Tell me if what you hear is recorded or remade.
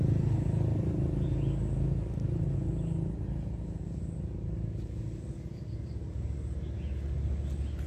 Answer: recorded